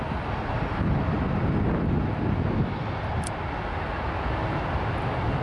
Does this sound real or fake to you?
real